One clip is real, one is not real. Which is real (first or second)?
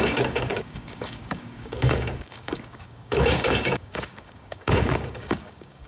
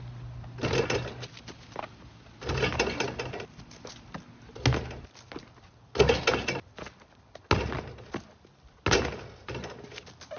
second